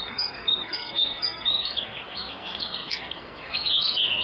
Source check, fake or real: fake